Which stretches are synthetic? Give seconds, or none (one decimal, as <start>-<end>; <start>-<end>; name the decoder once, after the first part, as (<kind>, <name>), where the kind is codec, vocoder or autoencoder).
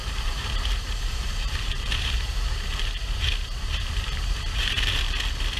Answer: 0.0-3.3 (vocoder, BigVGAN v2); 3.7-4.9